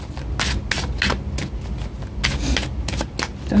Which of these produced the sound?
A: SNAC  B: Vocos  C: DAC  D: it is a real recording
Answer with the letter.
D